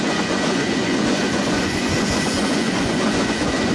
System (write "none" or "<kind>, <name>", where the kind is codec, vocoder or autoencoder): vocoder, Vocos